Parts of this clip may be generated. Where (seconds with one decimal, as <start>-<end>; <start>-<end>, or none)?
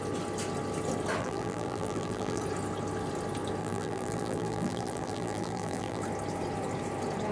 1.2-2.4; 3.6-6.0